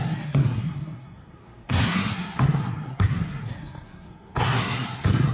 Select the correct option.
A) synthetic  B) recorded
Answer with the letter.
A